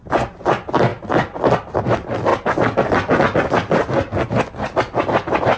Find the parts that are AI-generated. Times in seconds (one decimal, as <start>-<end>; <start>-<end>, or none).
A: none